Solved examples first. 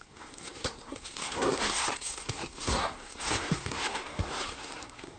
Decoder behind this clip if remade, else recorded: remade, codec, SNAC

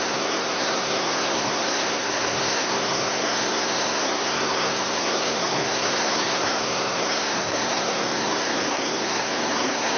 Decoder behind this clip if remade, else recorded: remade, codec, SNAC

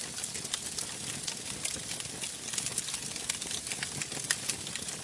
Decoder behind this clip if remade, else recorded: recorded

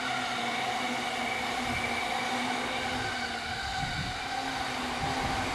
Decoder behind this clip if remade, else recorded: recorded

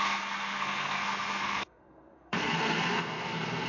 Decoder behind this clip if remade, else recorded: remade, codec, SNAC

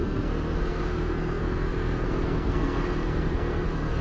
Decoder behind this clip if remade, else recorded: remade, codec, SNAC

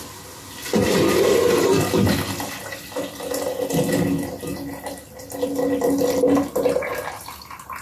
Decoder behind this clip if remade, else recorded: recorded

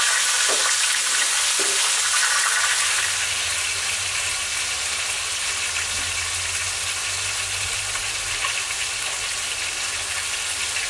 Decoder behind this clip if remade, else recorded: recorded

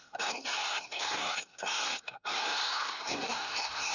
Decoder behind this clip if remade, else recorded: remade, codec, SNAC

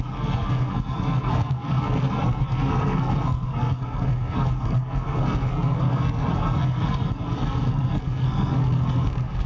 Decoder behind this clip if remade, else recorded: remade, codec, SNAC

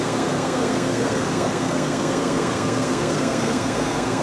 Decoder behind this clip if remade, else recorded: remade, codec, SNAC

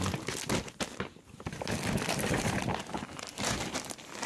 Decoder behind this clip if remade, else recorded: recorded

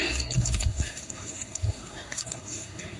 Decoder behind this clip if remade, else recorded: remade, codec, SNAC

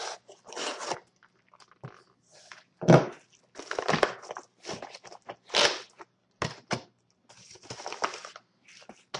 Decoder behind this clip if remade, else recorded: recorded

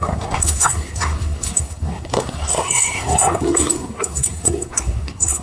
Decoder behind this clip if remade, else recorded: remade, codec, SNAC